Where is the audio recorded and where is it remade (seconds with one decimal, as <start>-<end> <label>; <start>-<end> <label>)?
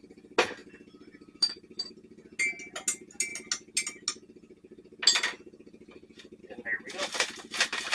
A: 0.0-7.9 recorded